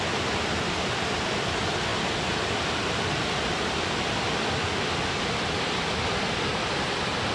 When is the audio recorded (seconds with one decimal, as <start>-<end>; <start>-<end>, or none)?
0.0-7.3